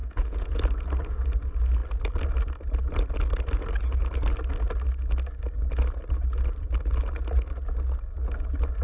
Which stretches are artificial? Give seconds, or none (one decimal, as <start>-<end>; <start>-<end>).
0.0-0.6